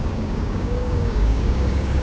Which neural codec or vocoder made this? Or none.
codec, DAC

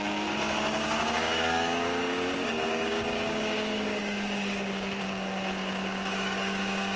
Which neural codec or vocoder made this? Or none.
codec, DAC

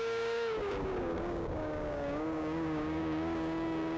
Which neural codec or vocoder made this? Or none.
codec, DAC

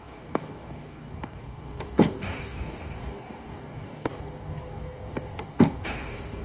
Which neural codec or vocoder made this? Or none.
codec, DAC